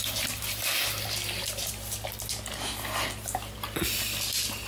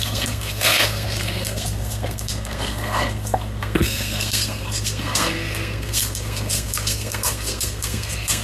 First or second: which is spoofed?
second